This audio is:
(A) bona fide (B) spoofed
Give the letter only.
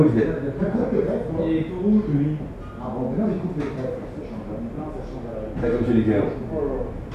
A